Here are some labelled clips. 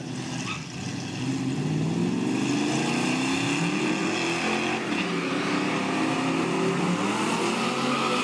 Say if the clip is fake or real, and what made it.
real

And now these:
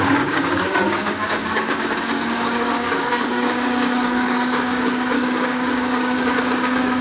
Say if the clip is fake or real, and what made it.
fake, codec, DAC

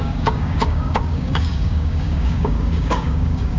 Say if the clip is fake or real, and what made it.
fake, codec, DAC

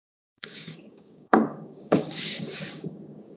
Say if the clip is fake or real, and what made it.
fake, codec, DAC